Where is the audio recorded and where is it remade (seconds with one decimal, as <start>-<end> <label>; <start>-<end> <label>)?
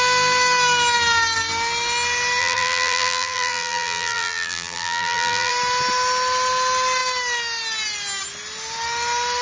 0.0-2.4 recorded; 2.4-5.5 remade; 5.5-9.4 recorded